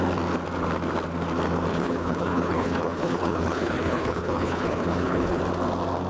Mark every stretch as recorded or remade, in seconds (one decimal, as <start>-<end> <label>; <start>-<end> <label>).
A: 0.0-1.7 recorded; 1.7-5.4 remade; 5.4-6.1 recorded